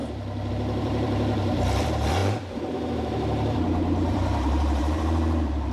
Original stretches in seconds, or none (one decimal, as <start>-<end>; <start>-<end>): 0.0-0.5